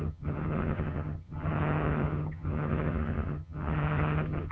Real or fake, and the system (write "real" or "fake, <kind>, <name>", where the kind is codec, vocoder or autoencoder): fake, vocoder, HiFi-GAN